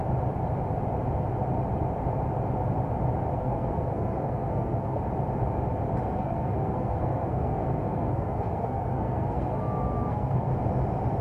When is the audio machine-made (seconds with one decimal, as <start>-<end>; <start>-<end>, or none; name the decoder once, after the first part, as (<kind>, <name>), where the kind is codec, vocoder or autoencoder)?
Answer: 3.3-5.0 (codec, SNAC); 6.0-10.5